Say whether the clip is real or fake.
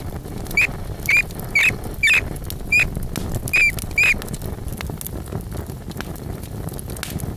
real